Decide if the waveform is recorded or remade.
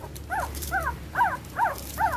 remade